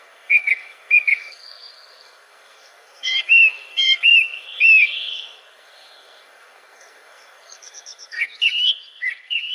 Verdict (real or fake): fake